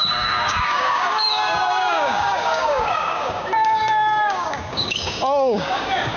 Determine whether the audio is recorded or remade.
remade